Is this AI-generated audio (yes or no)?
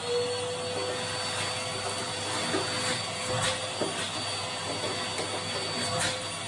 no